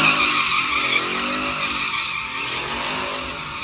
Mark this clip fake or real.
real